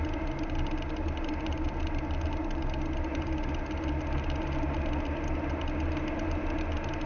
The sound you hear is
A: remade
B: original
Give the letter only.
B